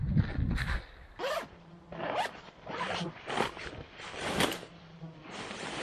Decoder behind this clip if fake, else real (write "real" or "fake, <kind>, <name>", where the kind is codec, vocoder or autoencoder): fake, vocoder, BigVGAN v2